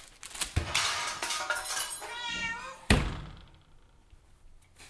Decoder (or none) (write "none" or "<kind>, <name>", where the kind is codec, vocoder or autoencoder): none